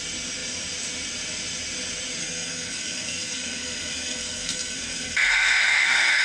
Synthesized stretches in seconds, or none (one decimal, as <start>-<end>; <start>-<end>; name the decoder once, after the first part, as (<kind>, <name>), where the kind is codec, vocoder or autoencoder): 2.2-6.2 (codec, SNAC)